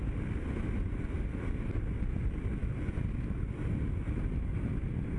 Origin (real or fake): real